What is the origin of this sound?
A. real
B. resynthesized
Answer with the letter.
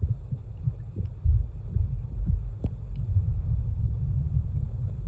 A